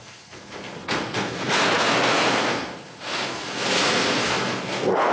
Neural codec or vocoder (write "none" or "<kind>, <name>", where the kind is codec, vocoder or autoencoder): codec, SNAC